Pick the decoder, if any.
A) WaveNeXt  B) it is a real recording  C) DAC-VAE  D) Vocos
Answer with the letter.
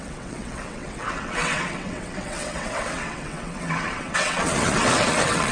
A